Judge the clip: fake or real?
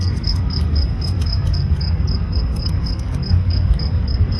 fake